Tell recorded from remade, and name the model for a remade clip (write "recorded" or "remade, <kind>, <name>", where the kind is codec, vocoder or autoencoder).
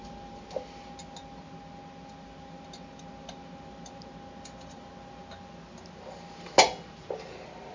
recorded